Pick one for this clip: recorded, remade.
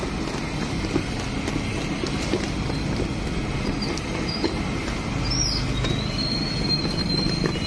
recorded